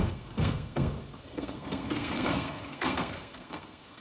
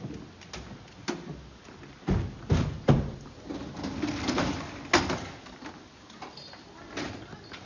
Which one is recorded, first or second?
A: second